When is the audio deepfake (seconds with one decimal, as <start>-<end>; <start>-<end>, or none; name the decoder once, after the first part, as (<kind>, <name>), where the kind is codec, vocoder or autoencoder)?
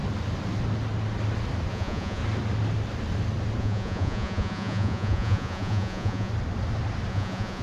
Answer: 1.7-2.2 (vocoder, Vocos); 3.6-6.3; 7.1-7.6